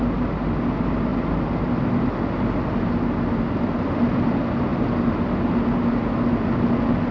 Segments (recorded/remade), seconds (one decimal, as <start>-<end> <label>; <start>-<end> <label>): 0.0-7.1 recorded